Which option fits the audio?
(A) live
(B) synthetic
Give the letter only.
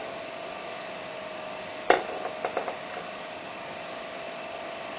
A